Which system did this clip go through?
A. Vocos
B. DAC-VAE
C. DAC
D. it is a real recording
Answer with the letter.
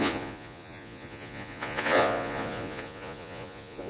A